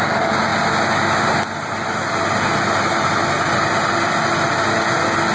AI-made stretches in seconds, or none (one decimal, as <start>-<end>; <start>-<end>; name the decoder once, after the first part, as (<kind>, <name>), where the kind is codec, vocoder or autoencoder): none